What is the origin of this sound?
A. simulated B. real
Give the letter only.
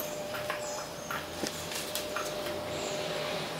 A